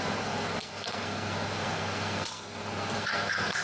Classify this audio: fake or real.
fake